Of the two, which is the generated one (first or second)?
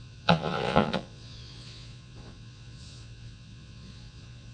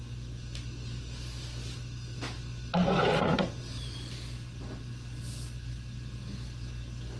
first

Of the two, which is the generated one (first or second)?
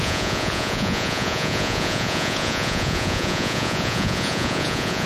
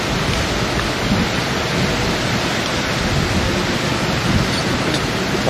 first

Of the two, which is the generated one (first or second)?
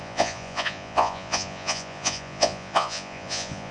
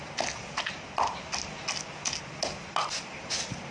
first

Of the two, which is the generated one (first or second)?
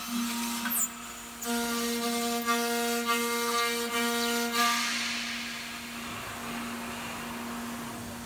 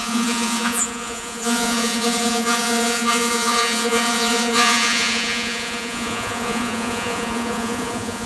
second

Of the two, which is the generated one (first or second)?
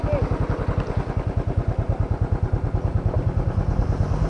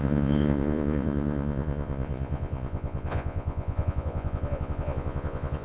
second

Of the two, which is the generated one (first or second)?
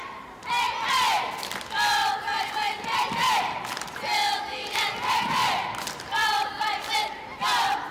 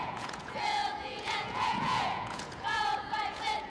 second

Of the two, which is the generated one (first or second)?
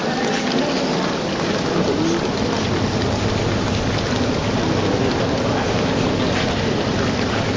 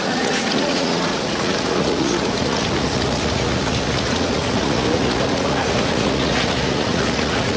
second